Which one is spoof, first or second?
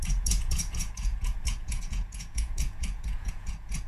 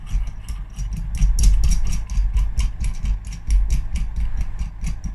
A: first